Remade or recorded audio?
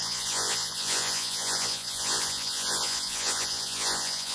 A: remade